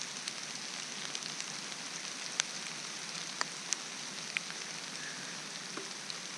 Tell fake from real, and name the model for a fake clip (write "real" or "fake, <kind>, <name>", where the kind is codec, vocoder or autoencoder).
real